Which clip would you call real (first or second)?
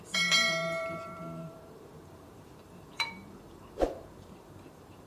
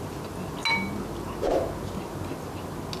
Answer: second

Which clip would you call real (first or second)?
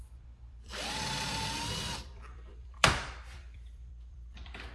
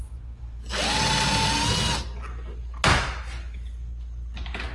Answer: second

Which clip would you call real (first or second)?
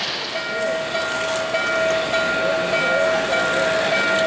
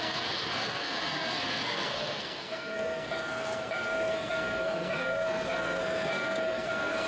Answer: first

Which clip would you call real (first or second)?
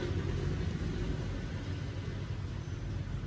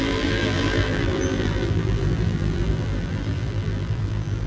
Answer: first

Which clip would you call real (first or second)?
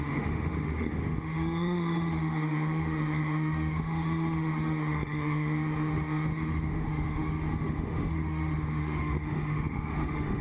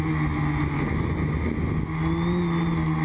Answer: second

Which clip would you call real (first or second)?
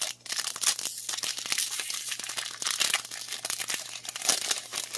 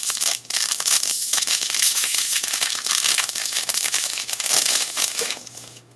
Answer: first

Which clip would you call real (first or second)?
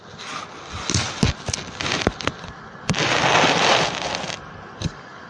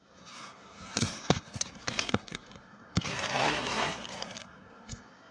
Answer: first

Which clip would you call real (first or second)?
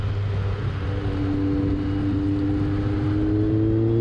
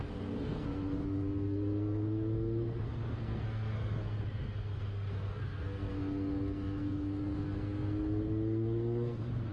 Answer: first